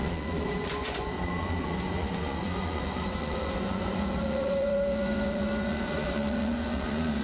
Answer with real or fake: fake